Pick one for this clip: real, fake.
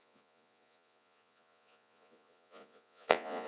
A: fake